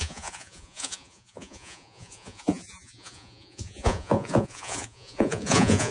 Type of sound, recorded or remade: remade